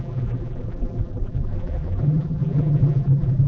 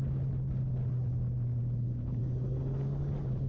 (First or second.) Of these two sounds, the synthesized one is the first